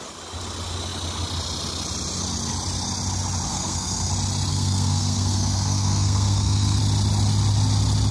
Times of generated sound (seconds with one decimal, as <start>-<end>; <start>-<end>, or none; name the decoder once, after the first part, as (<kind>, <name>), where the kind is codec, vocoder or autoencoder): 3.5-4.1 (codec, SNAC); 4.5-6.8